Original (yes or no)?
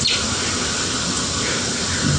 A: yes